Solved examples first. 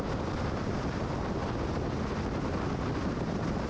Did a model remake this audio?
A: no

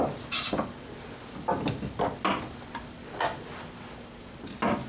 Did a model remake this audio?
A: no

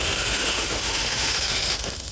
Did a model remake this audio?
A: yes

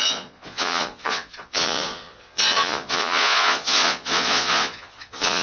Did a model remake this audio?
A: yes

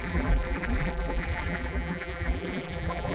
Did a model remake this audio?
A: yes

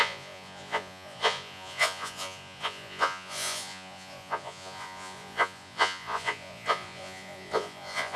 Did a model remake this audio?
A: yes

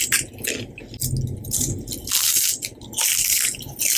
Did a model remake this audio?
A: no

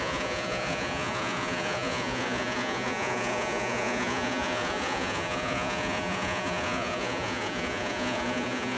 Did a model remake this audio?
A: yes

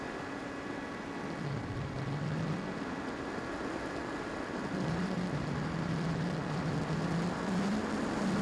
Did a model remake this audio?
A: yes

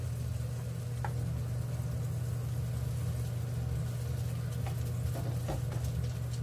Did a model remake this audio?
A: no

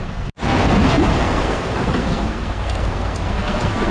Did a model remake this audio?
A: yes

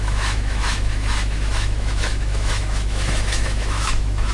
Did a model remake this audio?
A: yes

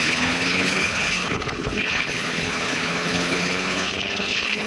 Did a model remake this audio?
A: yes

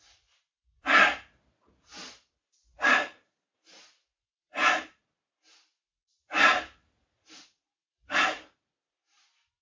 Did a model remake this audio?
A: no